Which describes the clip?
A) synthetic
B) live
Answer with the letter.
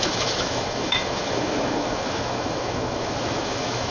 A